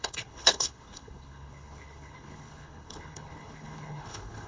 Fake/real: fake